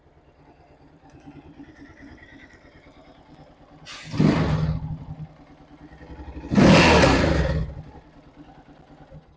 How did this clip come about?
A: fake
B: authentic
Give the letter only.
B